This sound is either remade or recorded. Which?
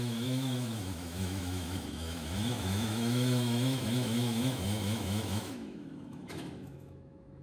remade